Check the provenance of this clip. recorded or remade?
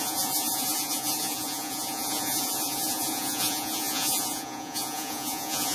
remade